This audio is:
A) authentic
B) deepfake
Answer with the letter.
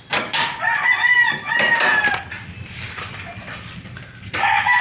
A